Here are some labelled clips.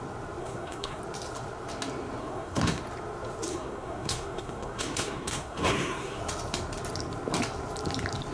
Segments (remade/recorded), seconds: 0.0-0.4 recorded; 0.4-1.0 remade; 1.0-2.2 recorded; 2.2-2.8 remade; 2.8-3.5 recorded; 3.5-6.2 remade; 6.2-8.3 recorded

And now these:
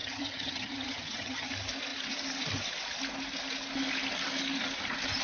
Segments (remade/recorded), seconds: 0.0-1.5 remade; 1.5-5.2 recorded